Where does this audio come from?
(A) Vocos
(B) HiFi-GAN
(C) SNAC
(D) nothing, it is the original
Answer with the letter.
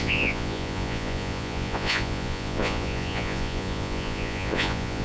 A